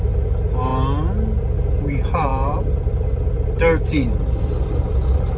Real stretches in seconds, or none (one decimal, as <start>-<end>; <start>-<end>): 0.7-1.6